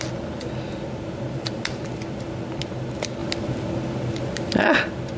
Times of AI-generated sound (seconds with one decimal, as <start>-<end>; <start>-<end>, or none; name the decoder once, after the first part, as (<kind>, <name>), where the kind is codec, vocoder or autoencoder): none